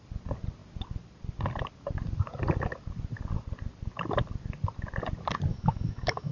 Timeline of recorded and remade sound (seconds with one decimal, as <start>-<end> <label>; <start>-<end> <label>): 0.0-5.5 recorded; 5.5-6.3 remade